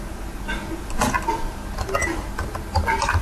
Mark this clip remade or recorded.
recorded